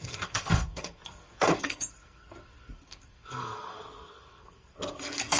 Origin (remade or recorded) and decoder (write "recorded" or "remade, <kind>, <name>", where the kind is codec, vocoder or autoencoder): remade, codec, SNAC